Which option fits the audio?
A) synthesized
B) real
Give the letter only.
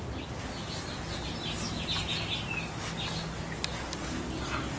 B